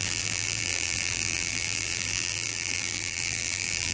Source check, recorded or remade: remade